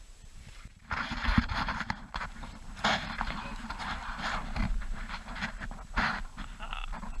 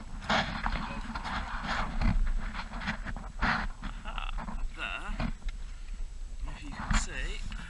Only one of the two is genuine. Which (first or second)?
second